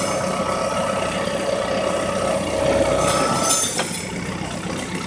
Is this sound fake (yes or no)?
no